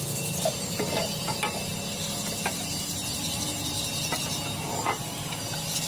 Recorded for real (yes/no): yes